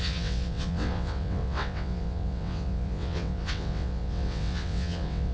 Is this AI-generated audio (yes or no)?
yes